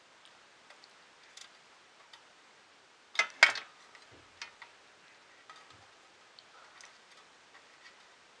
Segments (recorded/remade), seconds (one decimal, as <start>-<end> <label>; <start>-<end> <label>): 0.0-8.4 recorded